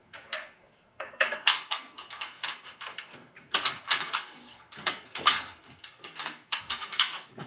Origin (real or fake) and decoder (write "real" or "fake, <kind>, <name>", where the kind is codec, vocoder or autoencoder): fake, codec, SNAC